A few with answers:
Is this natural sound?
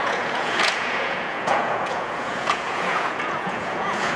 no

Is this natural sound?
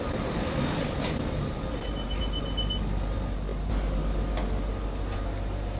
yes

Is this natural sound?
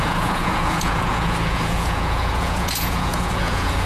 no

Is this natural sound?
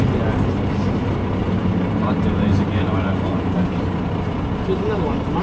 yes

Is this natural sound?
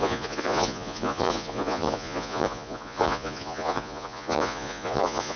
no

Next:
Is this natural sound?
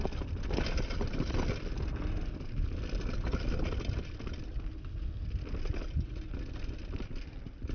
yes